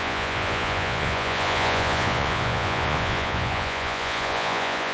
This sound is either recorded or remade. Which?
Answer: remade